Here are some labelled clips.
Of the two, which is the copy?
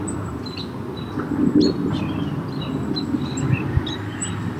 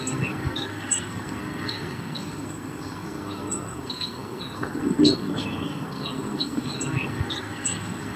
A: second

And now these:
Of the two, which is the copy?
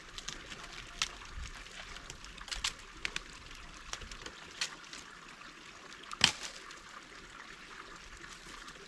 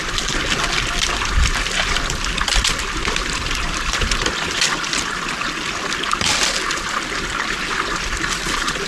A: second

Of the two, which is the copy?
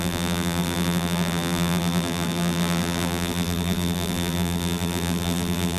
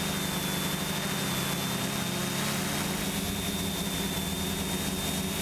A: first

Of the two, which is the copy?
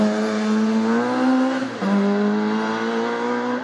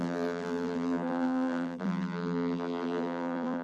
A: second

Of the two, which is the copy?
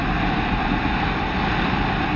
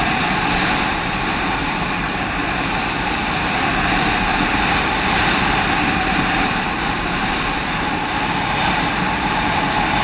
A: second